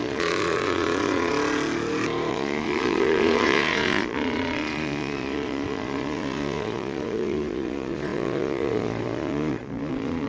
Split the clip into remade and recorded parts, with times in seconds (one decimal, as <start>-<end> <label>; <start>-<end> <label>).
0.0-1.3 remade; 1.3-2.3 recorded; 2.3-10.3 remade